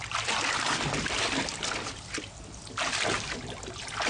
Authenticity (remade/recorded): recorded